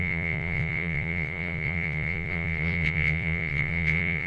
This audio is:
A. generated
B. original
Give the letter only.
A